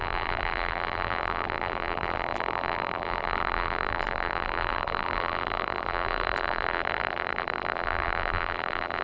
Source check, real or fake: fake